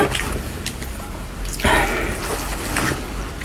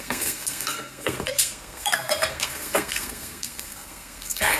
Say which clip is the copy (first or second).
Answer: second